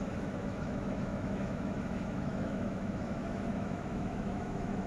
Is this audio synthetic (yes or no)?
yes